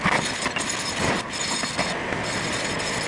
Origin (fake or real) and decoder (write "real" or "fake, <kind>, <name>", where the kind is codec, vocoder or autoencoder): real